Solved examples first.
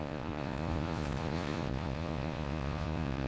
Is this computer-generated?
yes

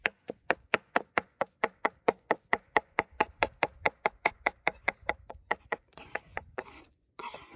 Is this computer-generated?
yes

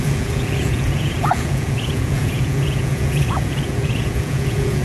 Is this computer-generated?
yes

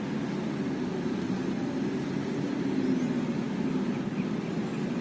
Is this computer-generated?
no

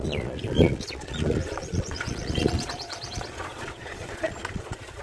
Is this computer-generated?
yes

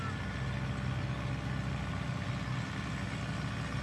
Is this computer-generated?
no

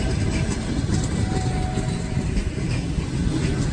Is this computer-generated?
no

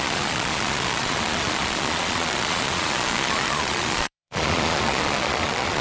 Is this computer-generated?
yes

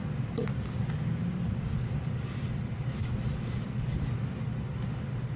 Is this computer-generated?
no